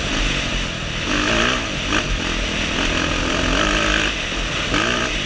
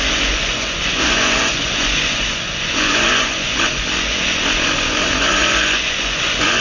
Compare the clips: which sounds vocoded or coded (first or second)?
second